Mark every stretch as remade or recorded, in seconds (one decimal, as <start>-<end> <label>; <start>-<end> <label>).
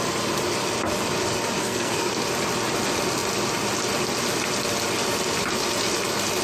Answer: 0.0-1.6 recorded; 1.6-2.1 remade; 2.1-6.4 recorded